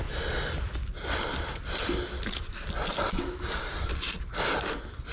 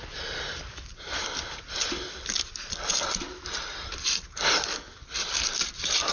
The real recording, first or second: first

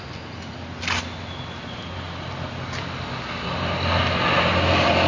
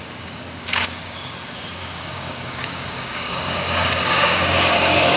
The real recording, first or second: first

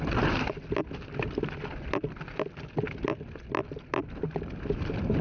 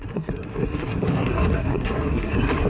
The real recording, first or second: first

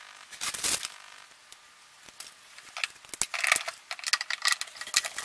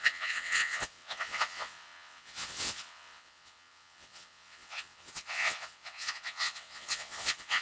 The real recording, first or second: first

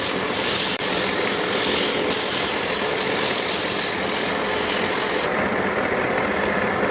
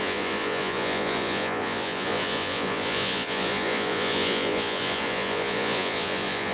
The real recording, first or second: first